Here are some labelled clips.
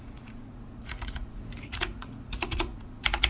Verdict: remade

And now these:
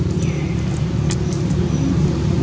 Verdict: recorded